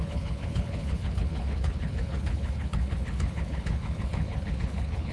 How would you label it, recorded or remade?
remade